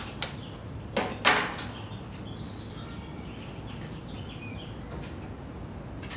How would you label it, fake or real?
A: real